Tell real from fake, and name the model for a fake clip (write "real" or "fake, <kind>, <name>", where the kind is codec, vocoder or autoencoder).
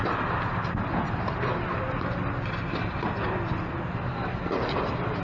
real